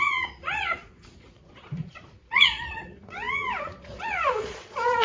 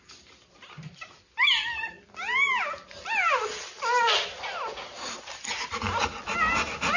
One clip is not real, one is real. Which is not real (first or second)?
first